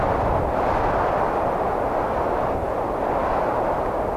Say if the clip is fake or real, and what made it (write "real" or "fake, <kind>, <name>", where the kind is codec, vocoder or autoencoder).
real